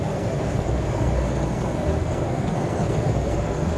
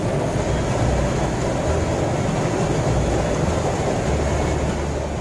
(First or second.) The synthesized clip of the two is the first